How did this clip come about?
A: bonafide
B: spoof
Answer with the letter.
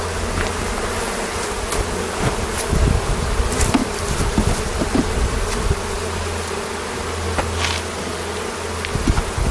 A